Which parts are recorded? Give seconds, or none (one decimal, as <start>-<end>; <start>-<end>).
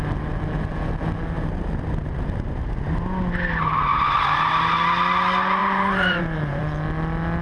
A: 0.0-3.9; 4.6-5.6; 6.6-7.4